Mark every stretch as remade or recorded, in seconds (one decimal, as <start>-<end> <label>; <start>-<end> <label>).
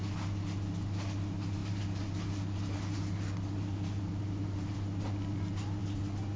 0.0-1.6 recorded; 1.6-4.7 remade; 4.7-6.4 recorded